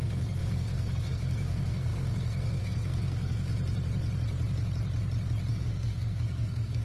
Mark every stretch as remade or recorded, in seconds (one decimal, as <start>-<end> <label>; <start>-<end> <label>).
0.0-3.5 remade; 3.5-5.5 recorded; 5.5-6.8 remade